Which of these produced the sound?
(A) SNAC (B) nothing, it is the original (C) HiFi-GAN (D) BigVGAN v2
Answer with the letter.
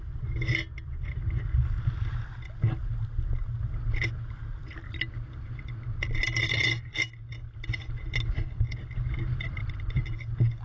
B